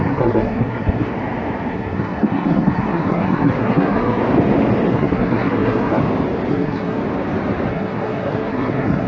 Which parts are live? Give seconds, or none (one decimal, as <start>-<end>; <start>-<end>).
1.1-1.7; 4.2-4.9; 6.0-6.5; 7.0-7.7